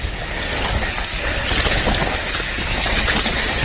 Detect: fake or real real